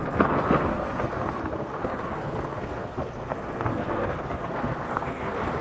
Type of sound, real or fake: fake